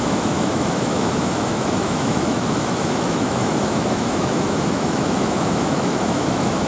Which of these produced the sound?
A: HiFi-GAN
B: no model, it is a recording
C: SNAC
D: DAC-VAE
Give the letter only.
D